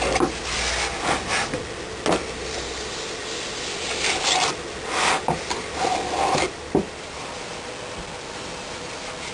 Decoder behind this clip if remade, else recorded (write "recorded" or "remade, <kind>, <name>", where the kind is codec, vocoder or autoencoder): recorded